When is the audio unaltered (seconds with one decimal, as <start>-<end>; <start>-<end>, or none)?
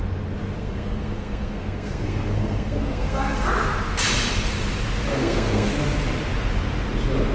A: 0.0-0.6; 3.5-5.1; 5.7-7.3